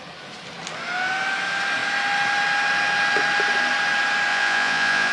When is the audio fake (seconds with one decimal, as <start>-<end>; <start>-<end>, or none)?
4.3-5.1